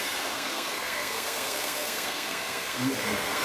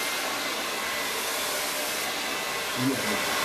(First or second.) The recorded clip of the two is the second